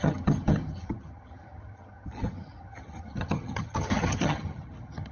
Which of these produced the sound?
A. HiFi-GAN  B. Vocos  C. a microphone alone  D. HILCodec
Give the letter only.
A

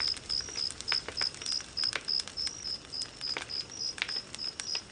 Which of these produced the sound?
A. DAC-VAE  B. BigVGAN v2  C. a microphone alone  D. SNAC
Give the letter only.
C